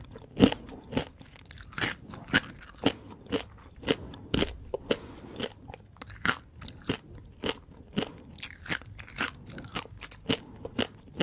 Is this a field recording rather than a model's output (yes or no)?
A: yes